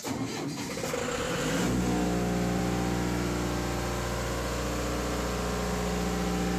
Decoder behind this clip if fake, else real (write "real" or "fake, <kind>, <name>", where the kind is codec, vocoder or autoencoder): real